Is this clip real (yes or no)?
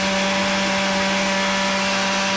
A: yes